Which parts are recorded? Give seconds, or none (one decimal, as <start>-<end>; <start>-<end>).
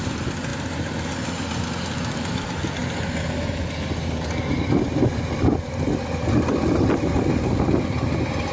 0.0-8.5